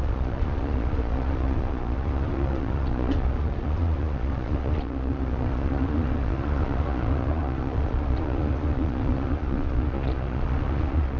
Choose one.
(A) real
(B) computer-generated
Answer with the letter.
B